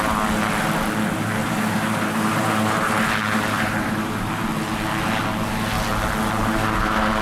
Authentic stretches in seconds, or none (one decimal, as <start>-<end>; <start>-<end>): 0.0-1.4; 4.1-7.2